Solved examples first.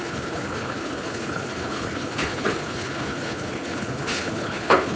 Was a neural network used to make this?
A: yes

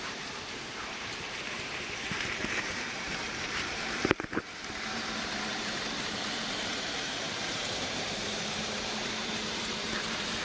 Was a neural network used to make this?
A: yes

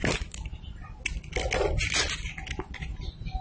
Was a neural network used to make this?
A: no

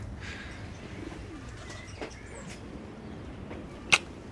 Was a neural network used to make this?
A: no